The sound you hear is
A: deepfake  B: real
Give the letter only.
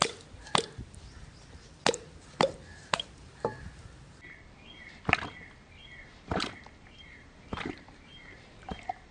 A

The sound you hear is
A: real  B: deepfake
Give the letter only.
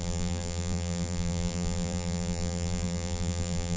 B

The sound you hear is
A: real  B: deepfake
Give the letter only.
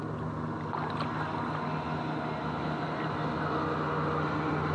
A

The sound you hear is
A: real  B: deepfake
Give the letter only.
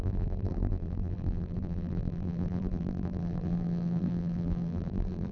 B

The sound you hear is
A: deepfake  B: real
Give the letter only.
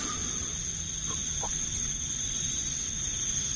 B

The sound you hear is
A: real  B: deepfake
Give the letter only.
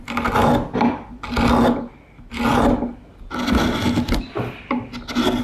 A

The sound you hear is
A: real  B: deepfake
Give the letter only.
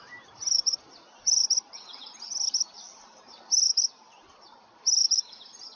B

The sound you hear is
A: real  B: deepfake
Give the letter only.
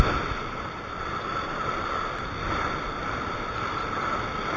B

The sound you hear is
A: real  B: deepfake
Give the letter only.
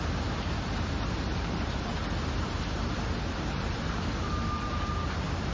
B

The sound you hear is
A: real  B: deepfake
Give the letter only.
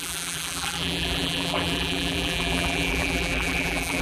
B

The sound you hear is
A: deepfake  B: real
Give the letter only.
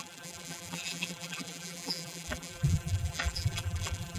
A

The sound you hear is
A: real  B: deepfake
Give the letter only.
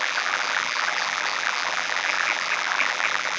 B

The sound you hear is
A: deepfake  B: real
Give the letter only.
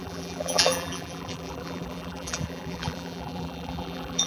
A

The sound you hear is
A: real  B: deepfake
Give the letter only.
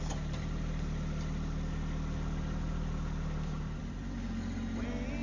A